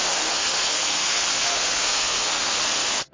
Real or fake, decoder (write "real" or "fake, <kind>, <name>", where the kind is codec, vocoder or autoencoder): fake, codec, SNAC